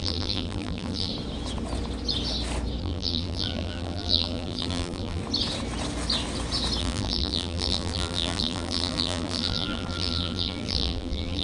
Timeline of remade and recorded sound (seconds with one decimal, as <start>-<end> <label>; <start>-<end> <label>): 0.0-1.1 remade; 1.1-2.8 recorded; 2.8-5.2 remade; 5.2-6.8 recorded; 6.8-11.4 remade